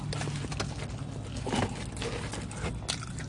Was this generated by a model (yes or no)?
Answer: no